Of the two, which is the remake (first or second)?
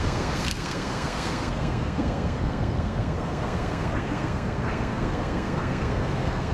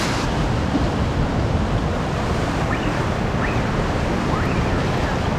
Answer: first